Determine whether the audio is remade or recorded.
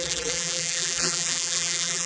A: remade